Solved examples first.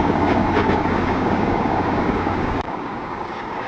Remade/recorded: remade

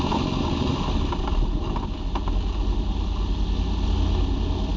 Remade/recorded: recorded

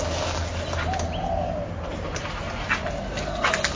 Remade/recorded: recorded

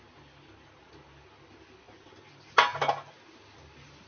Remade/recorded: recorded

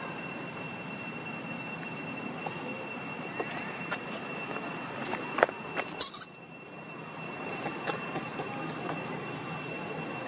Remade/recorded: recorded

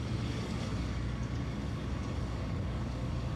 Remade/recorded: remade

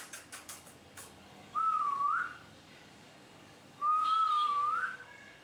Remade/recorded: remade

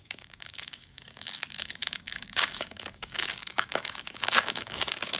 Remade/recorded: remade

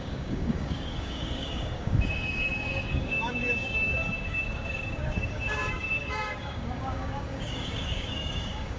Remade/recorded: remade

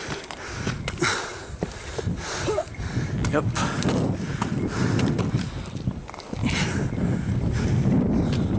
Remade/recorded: recorded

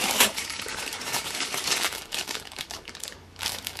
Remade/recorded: remade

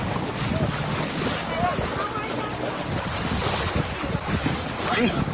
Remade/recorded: recorded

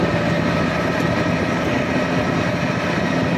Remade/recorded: recorded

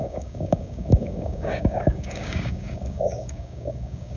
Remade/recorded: remade